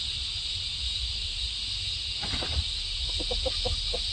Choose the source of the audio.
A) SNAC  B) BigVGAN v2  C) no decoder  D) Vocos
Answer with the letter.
C